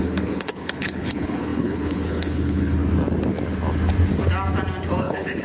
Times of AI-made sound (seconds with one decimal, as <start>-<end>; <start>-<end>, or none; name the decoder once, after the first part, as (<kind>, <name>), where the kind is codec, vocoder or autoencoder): 0.0-2.8 (codec, HILCodec); 5.0-5.4